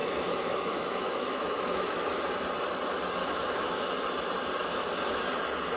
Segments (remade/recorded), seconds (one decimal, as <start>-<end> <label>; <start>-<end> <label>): 0.0-2.2 remade; 2.2-3.2 recorded; 3.2-3.9 remade; 3.9-4.6 recorded; 4.6-5.2 remade; 5.2-5.8 recorded